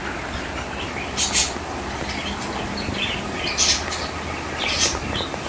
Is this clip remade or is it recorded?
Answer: recorded